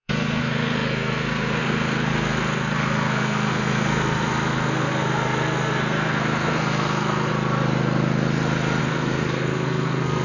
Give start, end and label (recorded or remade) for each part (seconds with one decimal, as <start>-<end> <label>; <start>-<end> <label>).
0.0-7.3 remade; 7.3-8.8 recorded; 8.8-10.2 remade